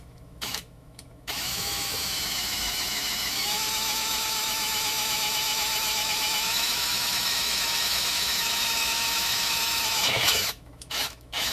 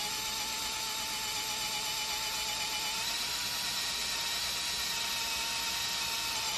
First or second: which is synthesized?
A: first